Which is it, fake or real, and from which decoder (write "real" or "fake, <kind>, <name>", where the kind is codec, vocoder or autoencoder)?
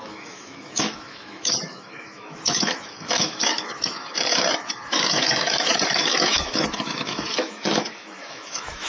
fake, autoencoder, DAC-VAE